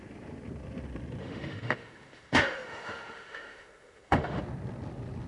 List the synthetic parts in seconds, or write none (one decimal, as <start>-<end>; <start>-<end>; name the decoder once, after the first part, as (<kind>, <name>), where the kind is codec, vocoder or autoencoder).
1.2-4.4 (autoencoder, DAC-VAE)